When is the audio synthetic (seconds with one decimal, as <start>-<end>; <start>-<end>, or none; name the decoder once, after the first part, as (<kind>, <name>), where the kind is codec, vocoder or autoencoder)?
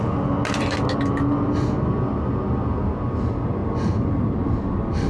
none